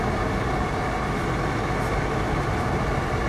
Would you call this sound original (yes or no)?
yes